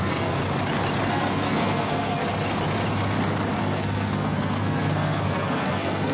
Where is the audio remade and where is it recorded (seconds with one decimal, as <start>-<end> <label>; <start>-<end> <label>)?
0.0-0.4 remade; 0.4-1.1 recorded; 1.1-2.2 remade; 2.2-3.6 recorded; 3.6-6.1 remade